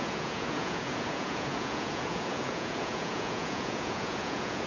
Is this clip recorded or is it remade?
remade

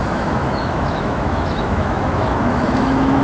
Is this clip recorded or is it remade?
remade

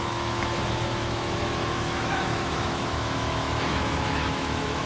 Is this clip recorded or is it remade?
remade